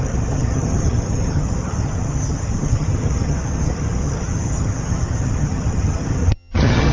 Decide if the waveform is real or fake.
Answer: fake